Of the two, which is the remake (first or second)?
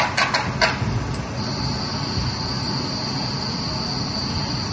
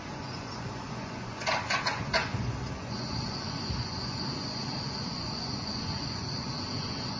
second